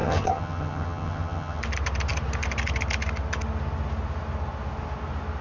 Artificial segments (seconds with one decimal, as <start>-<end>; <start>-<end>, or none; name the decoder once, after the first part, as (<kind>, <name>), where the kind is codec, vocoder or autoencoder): 0.0-1.6 (vocoder, HiFi-GAN)